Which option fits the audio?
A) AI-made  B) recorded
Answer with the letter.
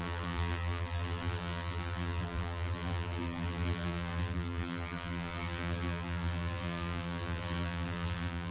A